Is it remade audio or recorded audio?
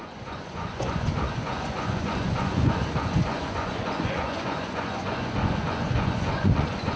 remade